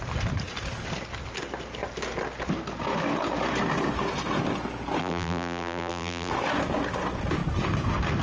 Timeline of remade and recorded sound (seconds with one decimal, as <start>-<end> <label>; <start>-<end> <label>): 0.0-5.0 recorded; 5.0-6.3 remade; 6.3-8.2 recorded